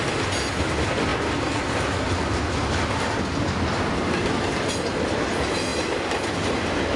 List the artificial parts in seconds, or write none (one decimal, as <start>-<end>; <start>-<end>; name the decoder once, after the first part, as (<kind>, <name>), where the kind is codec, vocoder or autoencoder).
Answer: 5.7-6.3 (vocoder, BigVGAN v2)